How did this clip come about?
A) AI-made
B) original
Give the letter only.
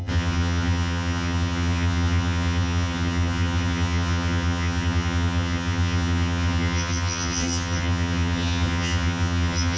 A